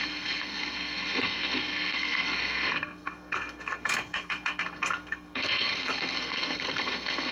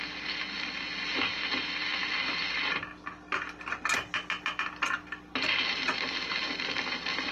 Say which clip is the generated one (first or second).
first